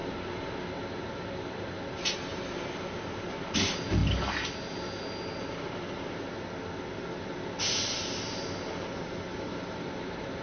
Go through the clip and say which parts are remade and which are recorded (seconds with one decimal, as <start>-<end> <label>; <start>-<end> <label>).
0.0-9.3 recorded; 9.3-10.4 remade